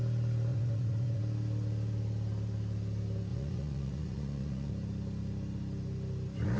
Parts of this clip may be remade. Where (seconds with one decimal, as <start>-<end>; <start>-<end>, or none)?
0.5-1.2; 3.3-4.7